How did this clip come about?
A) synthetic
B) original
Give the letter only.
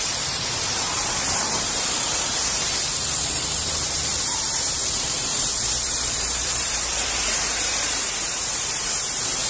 A